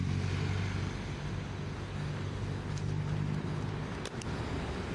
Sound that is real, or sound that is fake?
real